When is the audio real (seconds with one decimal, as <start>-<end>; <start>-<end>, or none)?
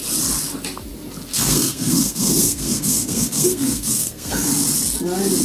0.0-1.3; 4.5-5.4